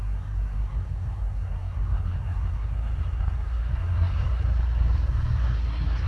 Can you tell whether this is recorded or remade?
remade